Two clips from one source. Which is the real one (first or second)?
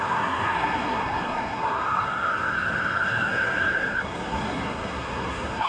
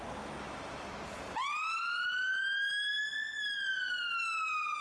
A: second